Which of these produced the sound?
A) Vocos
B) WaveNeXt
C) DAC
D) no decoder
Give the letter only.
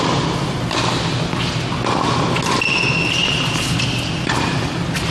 D